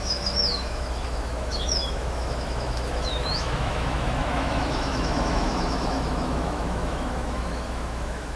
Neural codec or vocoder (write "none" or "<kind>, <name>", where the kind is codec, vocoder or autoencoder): autoencoder, DAC-VAE